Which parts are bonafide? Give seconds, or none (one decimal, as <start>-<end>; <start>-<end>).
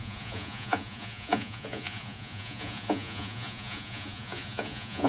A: none